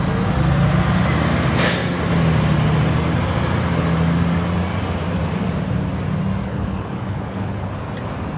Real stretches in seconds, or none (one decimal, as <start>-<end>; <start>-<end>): 0.0-6.4; 7.8-8.4